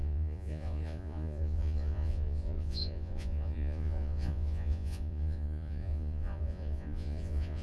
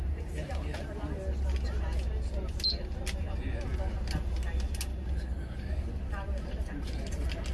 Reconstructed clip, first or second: first